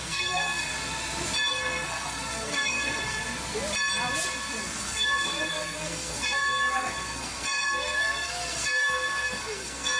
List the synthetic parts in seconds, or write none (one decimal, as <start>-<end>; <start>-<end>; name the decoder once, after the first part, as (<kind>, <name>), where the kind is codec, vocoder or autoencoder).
0.0-0.7 (codec, SNAC); 1.5-3.2; 4.6-10.0